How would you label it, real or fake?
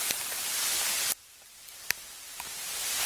real